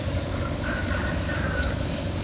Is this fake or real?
fake